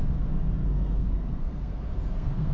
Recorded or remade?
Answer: remade